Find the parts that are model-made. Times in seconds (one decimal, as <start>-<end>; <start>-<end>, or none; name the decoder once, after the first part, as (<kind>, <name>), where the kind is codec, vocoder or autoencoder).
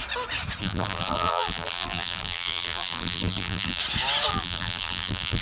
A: 0.6-3.8 (vocoder, BigVGAN v2); 4.3-5.4